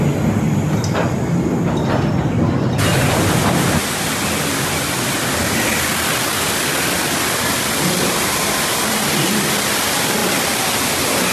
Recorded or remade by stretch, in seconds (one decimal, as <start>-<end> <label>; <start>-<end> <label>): 0.0-11.3 recorded